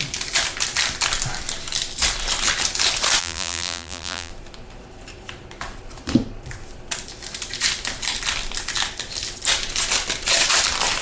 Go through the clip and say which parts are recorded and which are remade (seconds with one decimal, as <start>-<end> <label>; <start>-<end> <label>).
0.0-3.2 recorded; 3.2-4.3 remade; 4.3-11.0 recorded